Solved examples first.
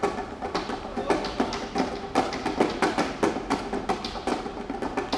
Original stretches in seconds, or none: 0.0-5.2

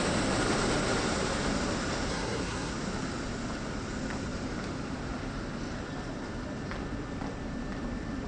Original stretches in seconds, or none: 0.0-2.1; 2.7-8.3

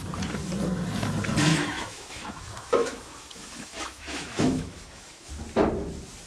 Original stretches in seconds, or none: 0.0-1.5; 5.3-6.3

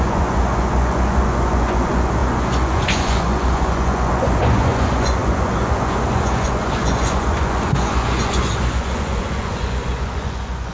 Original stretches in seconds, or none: none